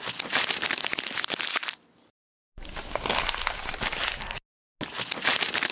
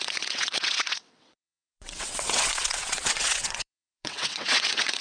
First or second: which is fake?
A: second